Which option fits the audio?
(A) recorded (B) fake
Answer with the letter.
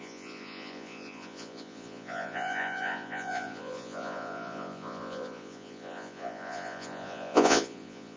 B